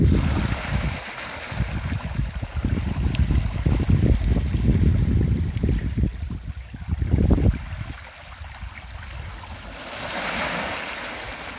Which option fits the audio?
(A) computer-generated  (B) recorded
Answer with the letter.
B